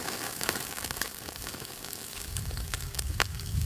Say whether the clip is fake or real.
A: fake